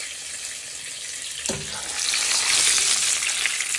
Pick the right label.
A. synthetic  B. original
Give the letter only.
B